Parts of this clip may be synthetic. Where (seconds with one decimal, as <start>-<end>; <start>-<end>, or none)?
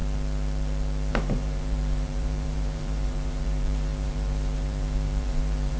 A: 1.1-5.8